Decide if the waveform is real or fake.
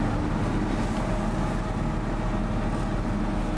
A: real